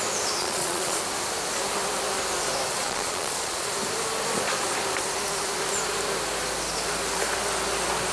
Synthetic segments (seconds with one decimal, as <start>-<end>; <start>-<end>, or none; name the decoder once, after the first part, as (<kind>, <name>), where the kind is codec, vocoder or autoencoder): 0.4-1.0 (vocoder, Vocos); 2.7-3.7